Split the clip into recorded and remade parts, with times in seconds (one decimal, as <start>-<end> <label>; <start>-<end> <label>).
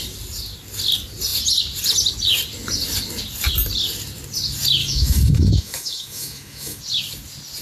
0.0-4.8 recorded; 4.8-6.8 remade; 6.8-7.6 recorded